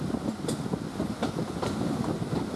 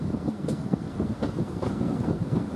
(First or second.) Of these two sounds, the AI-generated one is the second